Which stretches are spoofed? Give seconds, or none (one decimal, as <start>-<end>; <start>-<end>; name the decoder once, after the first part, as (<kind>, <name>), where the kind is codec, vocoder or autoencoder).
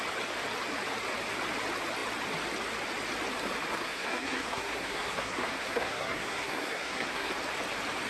3.7-7.3 (codec, SNAC)